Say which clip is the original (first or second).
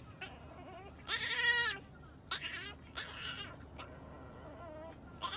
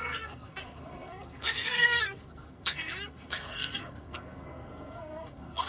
first